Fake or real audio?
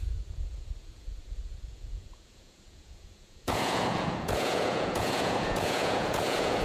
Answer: fake